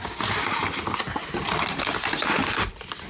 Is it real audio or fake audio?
real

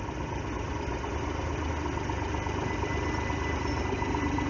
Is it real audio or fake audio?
real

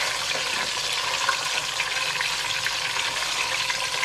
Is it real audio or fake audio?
real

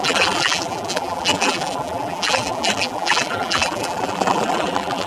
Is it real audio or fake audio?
fake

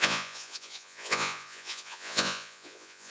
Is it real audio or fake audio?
fake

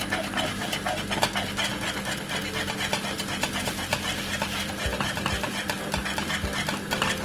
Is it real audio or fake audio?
real